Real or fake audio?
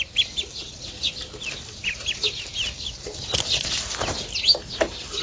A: real